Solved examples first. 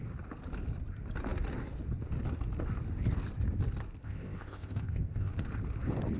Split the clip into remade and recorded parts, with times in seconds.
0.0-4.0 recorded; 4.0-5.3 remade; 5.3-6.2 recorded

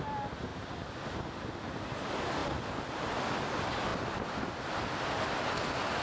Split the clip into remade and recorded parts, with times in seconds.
0.0-6.0 recorded

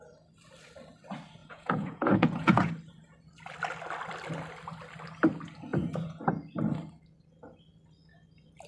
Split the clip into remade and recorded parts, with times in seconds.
0.0-1.4 recorded; 1.4-2.7 remade; 2.7-5.7 recorded; 5.7-6.3 remade; 6.3-8.7 recorded

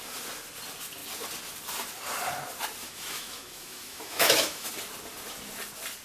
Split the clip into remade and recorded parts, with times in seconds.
0.0-2.8 recorded; 2.8-4.7 remade; 4.7-6.0 recorded